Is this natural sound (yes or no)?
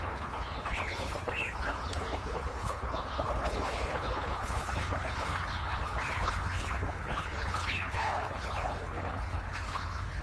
no